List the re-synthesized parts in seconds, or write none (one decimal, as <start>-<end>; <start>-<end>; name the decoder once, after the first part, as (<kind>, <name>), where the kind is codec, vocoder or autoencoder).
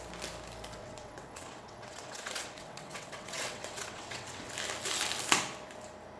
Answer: 0.8-4.5 (vocoder, WaveNeXt)